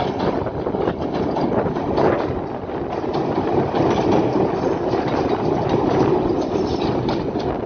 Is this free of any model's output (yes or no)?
yes